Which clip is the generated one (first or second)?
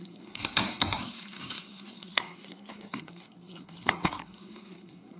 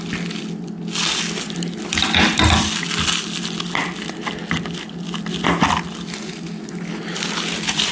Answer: first